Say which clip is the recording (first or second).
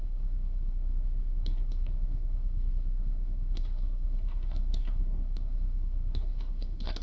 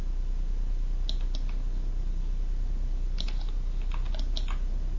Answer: second